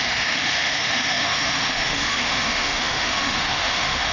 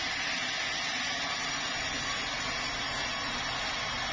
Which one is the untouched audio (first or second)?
second